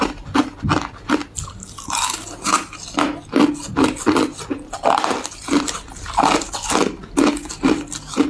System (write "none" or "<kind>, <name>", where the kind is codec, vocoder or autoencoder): none